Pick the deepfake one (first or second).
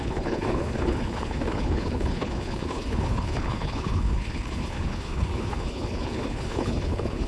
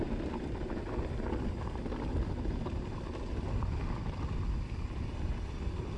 first